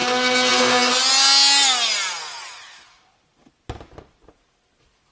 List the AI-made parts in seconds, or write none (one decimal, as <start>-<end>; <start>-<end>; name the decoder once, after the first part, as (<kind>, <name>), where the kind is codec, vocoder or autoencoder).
none